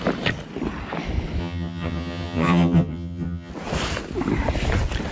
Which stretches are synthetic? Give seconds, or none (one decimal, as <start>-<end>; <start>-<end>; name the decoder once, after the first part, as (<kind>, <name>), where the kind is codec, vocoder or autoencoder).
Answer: 1.4-3.5 (vocoder, HiFi-GAN)